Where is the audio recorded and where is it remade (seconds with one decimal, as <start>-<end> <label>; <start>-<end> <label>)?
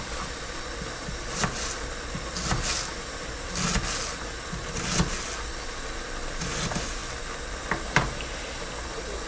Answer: 0.0-9.3 recorded